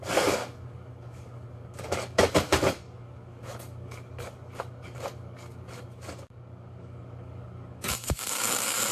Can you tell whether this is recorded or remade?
remade